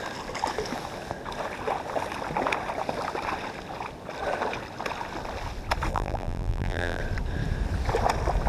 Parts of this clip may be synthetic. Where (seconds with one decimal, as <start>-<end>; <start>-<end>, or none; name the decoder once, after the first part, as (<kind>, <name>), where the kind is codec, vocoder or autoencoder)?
5.9-7.0 (vocoder, BigVGAN v2)